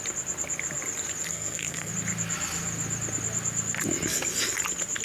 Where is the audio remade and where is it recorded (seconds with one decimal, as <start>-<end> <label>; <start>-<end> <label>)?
0.0-1.3 recorded; 1.3-1.9 remade; 1.9-5.0 recorded